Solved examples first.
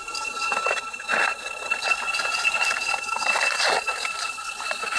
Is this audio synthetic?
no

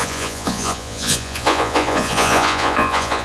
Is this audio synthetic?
yes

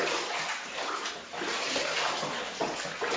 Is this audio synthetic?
no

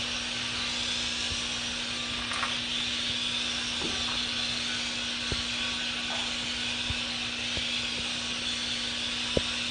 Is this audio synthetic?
no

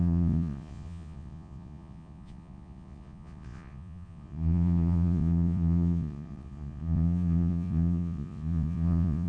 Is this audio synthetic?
yes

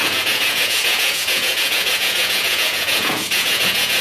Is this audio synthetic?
yes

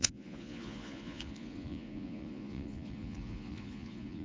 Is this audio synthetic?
yes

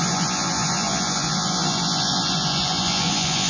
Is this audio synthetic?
yes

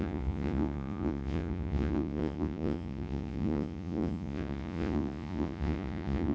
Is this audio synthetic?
yes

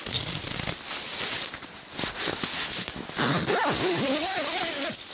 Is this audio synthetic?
no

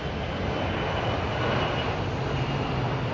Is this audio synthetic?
no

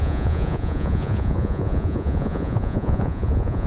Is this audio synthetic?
yes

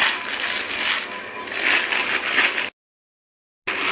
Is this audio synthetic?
no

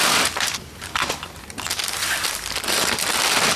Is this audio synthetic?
no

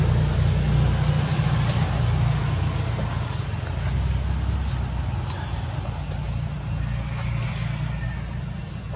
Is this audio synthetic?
no